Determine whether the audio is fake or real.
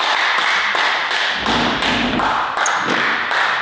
real